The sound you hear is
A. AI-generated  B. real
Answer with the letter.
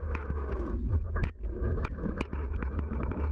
A